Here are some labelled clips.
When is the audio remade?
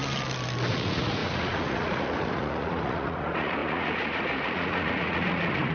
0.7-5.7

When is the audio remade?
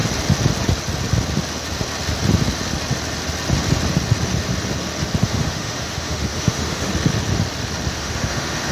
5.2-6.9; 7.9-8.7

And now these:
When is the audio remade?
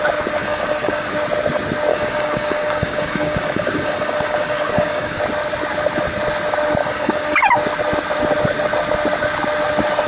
0.4-1.1; 1.9-5.2; 6.8-7.4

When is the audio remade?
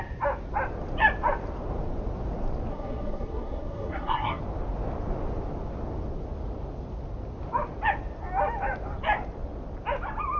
2.7-4.4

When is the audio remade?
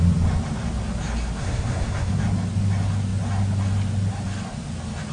1.4-2.1